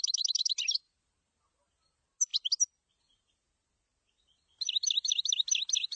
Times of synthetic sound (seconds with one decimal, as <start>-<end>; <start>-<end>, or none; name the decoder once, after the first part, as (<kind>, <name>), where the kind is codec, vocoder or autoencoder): none